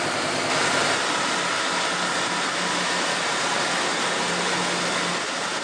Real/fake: real